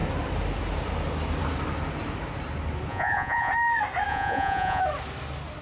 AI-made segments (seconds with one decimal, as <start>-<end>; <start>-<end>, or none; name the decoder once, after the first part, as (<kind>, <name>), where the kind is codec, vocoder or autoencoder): 2.9-3.5 (vocoder, Vocos); 4.1-4.8